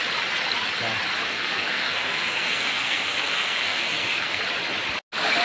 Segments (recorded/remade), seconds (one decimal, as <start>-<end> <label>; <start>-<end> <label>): 0.0-1.2 recorded; 1.2-4.4 remade; 4.4-5.4 recorded